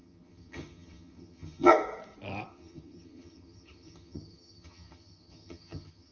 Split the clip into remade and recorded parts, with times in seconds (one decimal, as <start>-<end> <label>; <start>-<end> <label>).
0.0-1.7 remade; 1.7-2.5 recorded; 2.5-6.1 remade